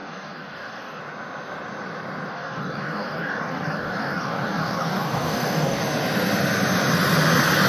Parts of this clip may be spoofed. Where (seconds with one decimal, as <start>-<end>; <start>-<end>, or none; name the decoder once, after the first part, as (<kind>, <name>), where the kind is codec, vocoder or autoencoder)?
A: 0.0-1.0 (codec, DAC); 2.3-5.8